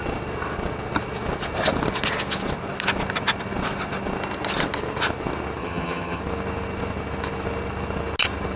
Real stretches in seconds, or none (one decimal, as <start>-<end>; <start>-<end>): 0.0-5.6; 6.2-8.6